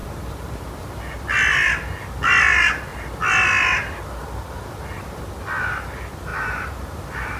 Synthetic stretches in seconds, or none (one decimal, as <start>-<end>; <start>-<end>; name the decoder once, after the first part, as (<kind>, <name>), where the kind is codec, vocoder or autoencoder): 0.0-1.1 (vocoder, BigVGAN v2); 6.3-6.9